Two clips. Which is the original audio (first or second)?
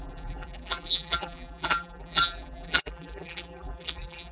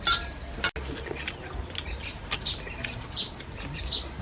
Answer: second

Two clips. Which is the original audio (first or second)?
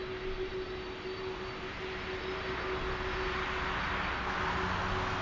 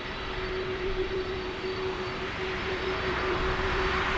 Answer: first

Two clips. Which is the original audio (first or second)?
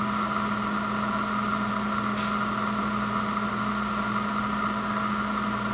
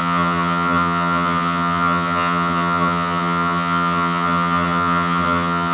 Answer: first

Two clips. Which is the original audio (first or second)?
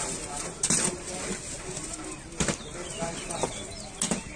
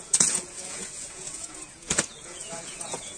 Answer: first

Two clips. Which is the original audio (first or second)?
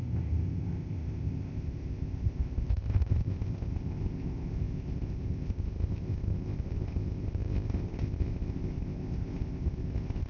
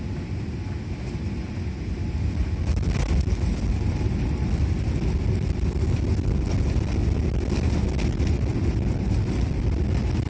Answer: second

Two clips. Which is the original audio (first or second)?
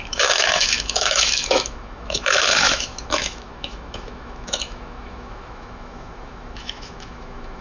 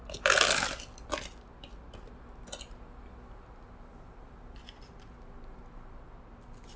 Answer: second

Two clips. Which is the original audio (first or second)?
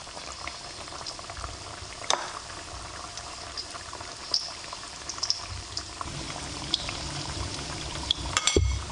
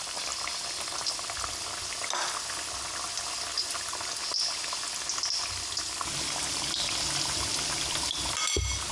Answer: second